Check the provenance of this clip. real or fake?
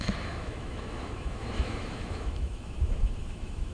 fake